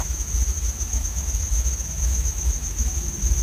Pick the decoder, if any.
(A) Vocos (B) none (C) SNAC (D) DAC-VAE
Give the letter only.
D